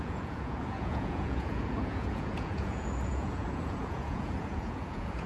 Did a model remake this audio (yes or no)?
yes